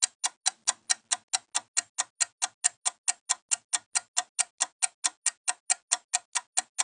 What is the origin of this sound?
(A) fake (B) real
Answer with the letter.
B